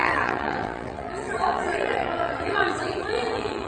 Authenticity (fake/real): fake